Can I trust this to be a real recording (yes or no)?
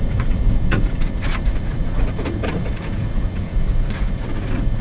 no